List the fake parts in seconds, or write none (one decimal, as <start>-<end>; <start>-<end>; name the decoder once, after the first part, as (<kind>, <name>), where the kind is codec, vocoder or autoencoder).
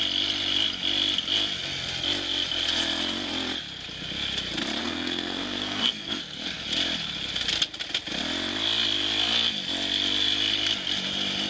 4.8-6.6 (codec, SNAC)